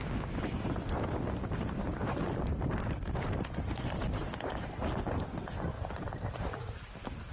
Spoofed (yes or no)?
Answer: no